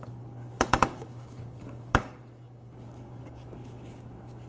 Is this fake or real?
fake